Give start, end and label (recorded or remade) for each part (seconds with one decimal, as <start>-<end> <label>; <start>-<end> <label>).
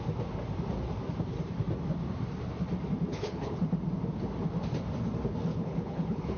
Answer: 0.0-3.1 recorded; 3.1-3.6 remade; 3.6-5.5 recorded; 5.5-6.4 remade